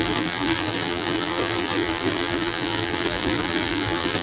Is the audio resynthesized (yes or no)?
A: yes